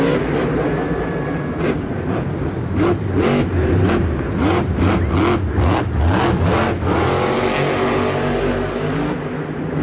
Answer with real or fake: real